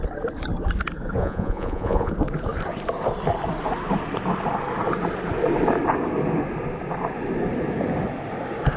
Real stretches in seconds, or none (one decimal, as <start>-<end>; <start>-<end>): 0.0-1.2; 2.1-8.8